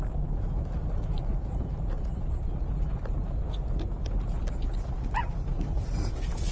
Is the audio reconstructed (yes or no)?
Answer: no